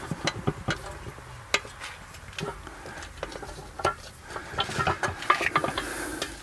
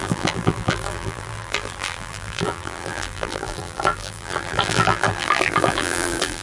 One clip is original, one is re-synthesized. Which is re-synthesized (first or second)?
second